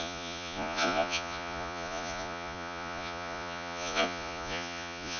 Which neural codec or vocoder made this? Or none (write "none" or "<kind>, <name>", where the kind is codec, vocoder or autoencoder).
vocoder, Vocos